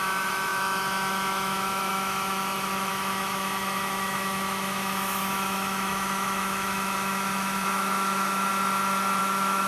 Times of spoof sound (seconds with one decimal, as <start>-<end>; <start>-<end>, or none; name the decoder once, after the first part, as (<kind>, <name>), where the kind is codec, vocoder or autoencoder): 0.0-8.5 (autoencoder, DAC-VAE); 9.2-9.7